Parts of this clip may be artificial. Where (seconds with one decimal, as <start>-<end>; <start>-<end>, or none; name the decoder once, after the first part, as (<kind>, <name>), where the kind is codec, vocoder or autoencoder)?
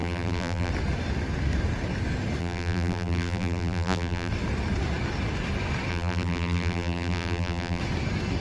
0.0-0.7 (vocoder, BigVGAN v2); 2.4-4.3; 5.9-7.8